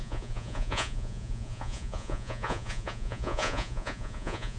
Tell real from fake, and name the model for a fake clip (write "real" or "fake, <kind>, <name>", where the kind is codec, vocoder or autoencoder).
fake, vocoder, Vocos